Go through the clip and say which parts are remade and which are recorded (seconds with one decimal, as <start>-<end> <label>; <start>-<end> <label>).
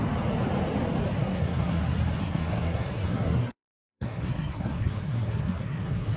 0.0-1.2 recorded; 1.2-1.8 remade; 1.8-2.2 recorded; 2.2-6.2 remade